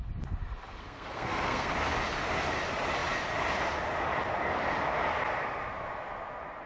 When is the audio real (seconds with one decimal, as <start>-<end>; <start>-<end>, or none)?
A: 0.0-0.8; 1.7-6.7

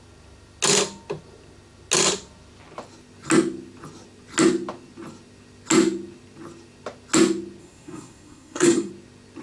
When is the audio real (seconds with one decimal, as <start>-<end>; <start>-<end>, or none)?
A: 0.0-7.6; 8.9-9.4

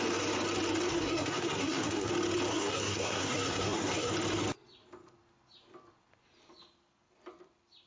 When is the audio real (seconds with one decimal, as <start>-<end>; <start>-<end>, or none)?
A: 0.0-0.9; 2.1-2.5; 4.1-7.9

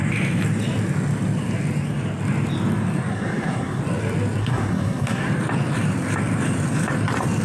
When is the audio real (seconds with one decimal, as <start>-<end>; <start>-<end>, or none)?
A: 0.0-3.1; 3.8-4.4; 5.3-7.4

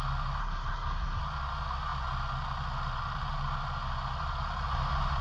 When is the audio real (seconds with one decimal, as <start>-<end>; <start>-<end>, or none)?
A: 0.0-0.4; 1.2-5.2

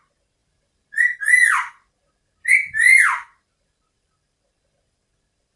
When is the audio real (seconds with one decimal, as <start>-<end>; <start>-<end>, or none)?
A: 0.0-5.6

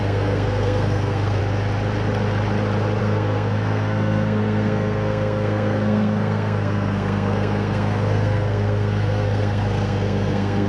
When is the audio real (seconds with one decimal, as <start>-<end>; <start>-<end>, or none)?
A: 1.4-3.0

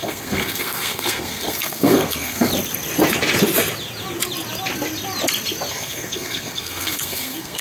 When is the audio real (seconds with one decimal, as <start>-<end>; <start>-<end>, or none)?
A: 2.5-5.7